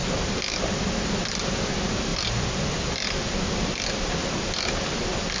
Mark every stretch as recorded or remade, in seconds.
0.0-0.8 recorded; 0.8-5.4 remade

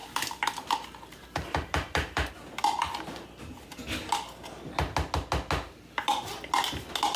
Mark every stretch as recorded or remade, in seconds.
0.0-2.3 remade; 2.3-7.2 recorded

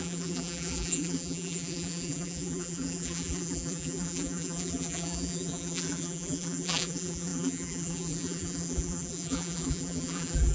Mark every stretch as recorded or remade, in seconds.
0.0-10.5 remade

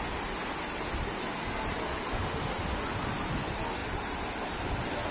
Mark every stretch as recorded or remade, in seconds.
0.0-5.1 recorded

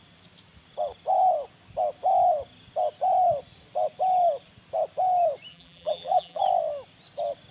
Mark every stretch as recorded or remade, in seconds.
0.0-5.5 recorded; 5.5-6.4 remade; 6.4-7.5 recorded